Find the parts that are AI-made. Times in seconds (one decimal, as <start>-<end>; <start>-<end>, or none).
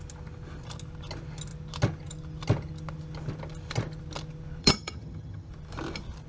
4.6-5.5